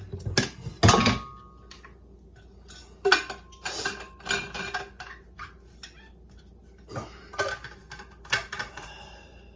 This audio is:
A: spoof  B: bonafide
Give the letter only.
B